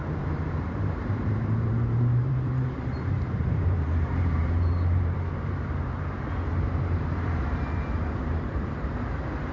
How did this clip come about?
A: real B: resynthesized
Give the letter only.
B